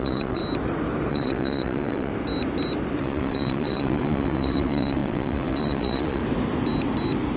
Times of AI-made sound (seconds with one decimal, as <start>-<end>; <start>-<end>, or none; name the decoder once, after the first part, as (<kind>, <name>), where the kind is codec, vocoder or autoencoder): 0.0-0.4 (vocoder, WaveNeXt); 1.1-2.1; 3.0-6.2